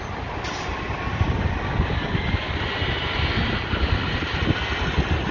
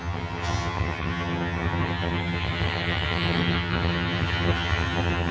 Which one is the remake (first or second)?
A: second